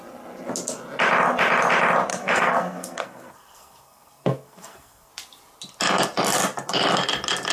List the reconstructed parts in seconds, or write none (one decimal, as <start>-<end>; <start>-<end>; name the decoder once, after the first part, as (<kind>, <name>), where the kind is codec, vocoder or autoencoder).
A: 2.1-5.1 (codec, SNAC)